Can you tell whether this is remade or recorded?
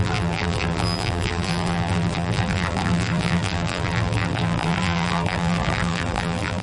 remade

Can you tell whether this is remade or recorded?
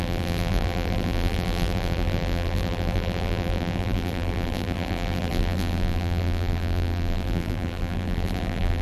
remade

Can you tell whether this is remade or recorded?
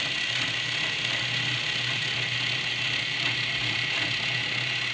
recorded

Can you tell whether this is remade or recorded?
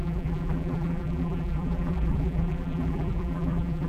remade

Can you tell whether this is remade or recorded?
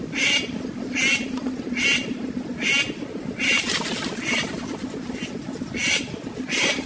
recorded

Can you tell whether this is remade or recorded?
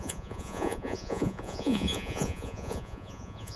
remade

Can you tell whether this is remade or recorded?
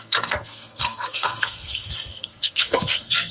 remade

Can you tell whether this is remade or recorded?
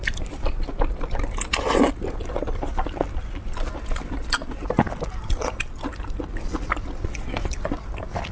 recorded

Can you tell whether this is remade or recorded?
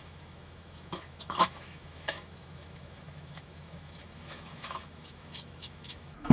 remade